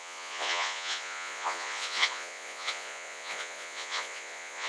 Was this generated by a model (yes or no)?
yes